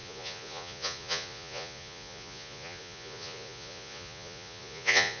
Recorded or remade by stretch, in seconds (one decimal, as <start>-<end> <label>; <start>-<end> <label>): 0.0-5.2 remade